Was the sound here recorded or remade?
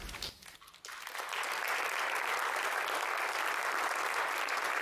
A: recorded